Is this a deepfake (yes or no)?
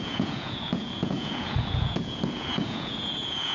yes